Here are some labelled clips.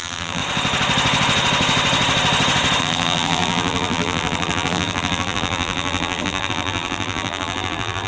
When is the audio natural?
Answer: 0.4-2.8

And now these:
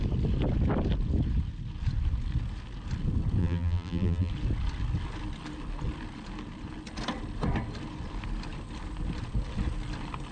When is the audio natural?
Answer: 0.0-3.4; 4.3-10.3

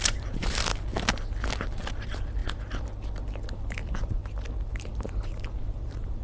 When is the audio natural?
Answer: 0.7-1.9; 2.4-3.5; 4.2-4.7

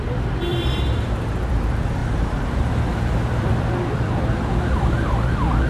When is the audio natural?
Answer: none

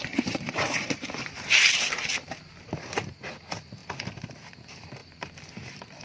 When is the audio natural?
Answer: 2.7-3.8; 4.5-5.0

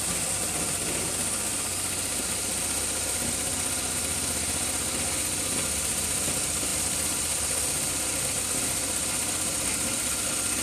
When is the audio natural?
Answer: 0.0-10.6

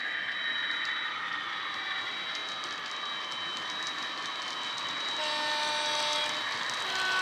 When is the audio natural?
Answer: 0.0-7.2